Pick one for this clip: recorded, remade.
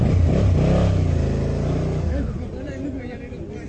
recorded